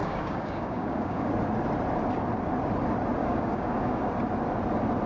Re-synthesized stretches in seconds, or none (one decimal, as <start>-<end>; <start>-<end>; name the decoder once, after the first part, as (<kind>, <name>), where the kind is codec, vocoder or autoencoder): 0.0-1.3 (codec, DAC); 3.2-4.1